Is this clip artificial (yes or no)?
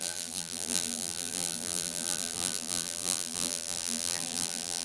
yes